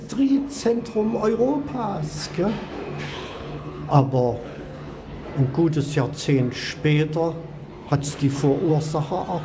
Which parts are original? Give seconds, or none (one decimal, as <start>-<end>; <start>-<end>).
0.8-3.1; 4.0-4.4; 5.2-7.6; 8.7-9.4